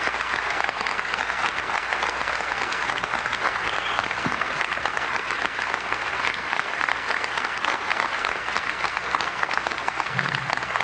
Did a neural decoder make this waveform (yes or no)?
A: yes